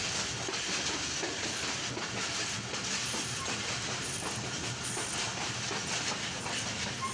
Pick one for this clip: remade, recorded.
recorded